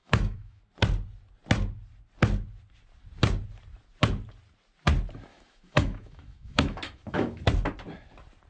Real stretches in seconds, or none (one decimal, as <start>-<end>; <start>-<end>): 0.6-5.3; 7.4-8.5